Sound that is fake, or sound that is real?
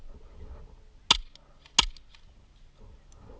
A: real